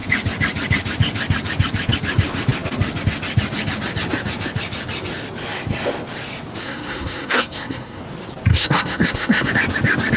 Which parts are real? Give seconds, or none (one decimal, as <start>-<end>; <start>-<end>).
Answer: 0.0-6.6; 8.0-8.5; 9.5-10.2

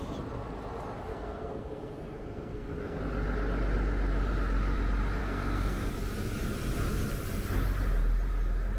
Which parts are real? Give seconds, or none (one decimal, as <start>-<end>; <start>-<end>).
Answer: 0.0-1.1; 3.0-5.2; 5.9-8.8

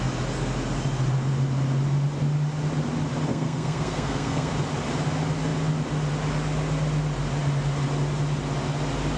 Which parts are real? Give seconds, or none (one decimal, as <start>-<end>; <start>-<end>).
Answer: 0.0-3.3; 4.5-9.2